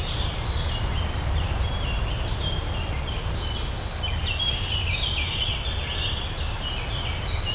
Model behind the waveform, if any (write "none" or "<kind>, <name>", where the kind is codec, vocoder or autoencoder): none